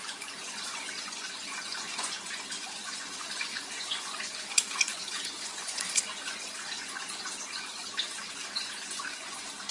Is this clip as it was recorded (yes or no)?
no